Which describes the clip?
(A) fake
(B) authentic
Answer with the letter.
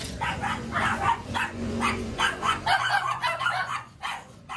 A